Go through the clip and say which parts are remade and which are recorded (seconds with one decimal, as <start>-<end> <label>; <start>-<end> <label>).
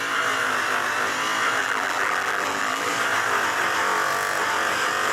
0.0-1.6 recorded; 1.6-2.9 remade; 2.9-5.1 recorded